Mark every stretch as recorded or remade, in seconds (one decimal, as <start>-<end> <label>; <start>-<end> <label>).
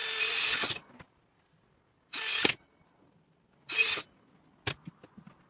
0.0-5.5 recorded